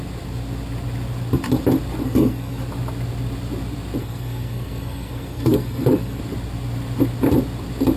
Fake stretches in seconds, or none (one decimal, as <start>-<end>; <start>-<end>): 2.0-2.6; 4.0-6.2